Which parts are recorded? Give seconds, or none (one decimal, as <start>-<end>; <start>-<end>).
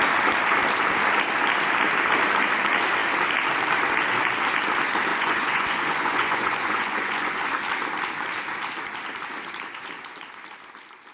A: 0.0-5.1; 7.4-11.1